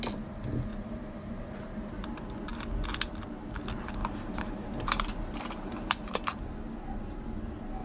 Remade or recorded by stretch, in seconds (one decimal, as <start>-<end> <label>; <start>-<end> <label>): 0.0-0.7 recorded; 0.7-1.4 remade; 1.4-4.0 recorded; 4.0-5.9 remade; 5.9-7.8 recorded